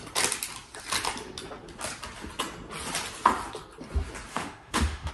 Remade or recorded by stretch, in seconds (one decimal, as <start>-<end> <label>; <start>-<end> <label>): 0.0-4.3 recorded; 4.3-5.1 remade